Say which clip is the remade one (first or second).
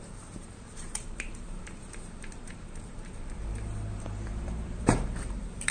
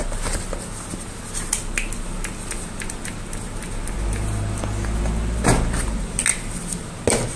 first